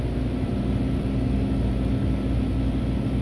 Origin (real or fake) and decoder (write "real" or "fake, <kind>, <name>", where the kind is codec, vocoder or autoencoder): real